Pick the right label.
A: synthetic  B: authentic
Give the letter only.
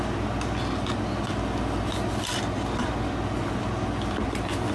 B